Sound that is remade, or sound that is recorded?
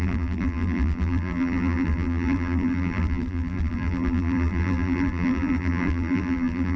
remade